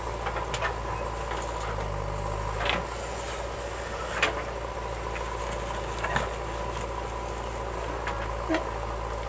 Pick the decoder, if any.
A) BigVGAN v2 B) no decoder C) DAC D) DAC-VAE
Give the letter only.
B